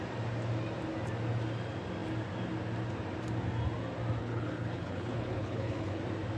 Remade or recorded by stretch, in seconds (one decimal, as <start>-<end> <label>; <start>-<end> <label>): 0.0-4.2 recorded; 4.2-6.0 remade; 6.0-6.4 recorded